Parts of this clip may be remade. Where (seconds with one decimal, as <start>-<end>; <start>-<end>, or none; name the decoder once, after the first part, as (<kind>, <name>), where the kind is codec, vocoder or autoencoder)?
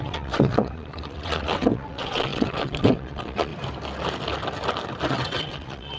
0.0-3.5 (vocoder, WaveNeXt); 5.1-6.0